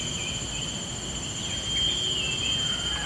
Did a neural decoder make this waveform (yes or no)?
no